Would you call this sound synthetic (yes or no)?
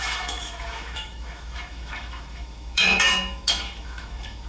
yes